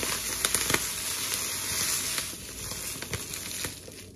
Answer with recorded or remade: recorded